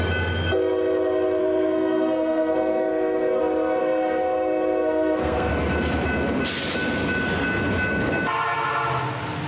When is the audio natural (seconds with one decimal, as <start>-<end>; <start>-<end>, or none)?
0.0-1.4; 3.4-3.8; 5.5-9.5